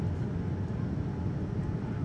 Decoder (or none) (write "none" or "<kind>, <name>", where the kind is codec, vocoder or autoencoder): none